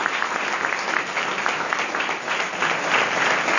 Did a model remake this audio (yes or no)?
no